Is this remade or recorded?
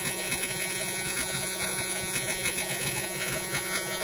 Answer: remade